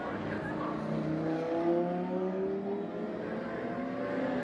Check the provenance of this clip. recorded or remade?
recorded